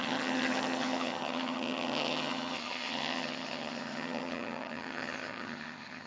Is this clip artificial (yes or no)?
yes